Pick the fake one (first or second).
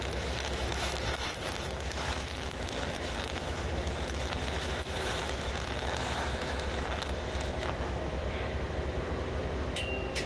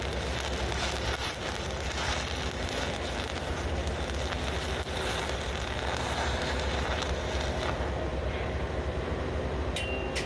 first